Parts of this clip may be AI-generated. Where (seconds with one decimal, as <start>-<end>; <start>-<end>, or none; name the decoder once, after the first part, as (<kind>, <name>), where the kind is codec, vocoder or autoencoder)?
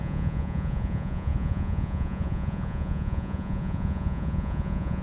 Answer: 0.0-5.0 (vocoder, Vocos)